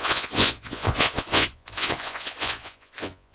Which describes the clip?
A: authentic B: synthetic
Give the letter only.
B